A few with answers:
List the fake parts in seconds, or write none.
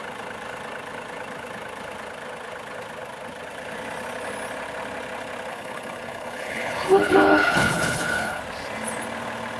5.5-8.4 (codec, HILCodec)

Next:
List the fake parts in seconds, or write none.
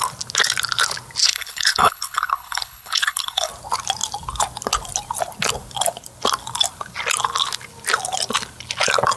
1.2-3.5 (codec, HILCodec)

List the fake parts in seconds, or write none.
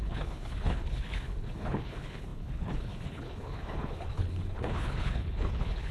0.0-5.9 (codec, HILCodec)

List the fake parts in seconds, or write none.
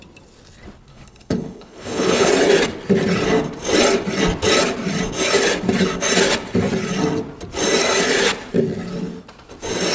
0.9-2.3 (codec, HILCodec)